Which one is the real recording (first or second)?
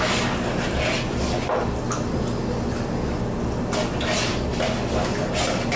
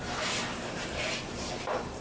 first